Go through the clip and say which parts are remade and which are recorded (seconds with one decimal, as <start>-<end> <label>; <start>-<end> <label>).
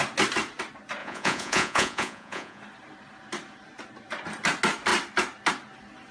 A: 0.0-1.0 recorded; 1.0-2.6 remade; 2.6-6.1 recorded